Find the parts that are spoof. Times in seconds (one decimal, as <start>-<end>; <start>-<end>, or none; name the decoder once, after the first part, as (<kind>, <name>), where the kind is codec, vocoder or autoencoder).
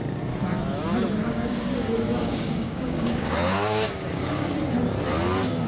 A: 1.2-4.6 (codec, DAC)